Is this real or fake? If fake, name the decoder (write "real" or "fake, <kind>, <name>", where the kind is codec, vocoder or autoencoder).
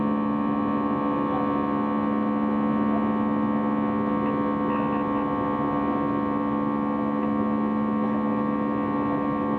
real